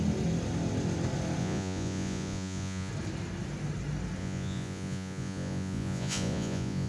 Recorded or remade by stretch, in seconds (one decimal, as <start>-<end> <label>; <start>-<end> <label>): 0.0-1.4 recorded; 1.4-2.9 remade; 2.9-4.2 recorded; 4.2-6.9 remade